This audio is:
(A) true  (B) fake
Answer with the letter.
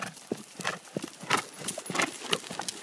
A